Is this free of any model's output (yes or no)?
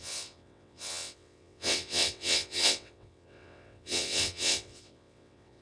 no